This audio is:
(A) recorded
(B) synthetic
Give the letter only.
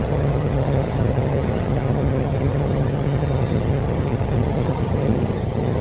B